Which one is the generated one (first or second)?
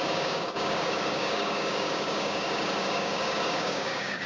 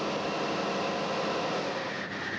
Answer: first